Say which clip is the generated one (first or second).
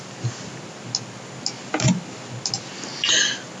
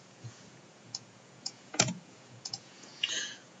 second